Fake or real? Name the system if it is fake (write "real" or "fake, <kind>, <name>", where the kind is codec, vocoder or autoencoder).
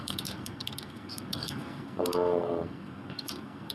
fake, codec, SNAC